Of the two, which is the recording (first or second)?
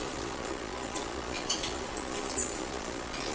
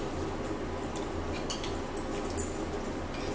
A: second